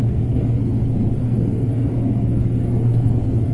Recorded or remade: remade